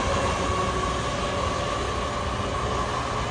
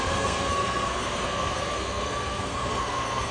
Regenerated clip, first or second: second